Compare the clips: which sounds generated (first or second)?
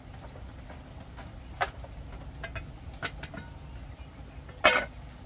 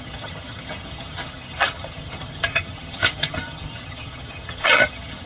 second